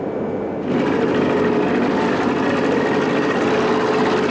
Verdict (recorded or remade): recorded